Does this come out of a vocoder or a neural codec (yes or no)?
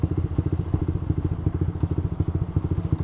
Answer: no